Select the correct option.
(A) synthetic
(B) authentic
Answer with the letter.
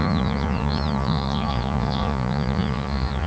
A